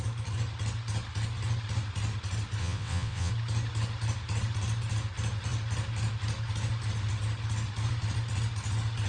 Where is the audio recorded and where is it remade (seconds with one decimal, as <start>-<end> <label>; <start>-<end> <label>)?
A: 0.0-2.6 recorded; 2.6-3.3 remade; 3.3-9.1 recorded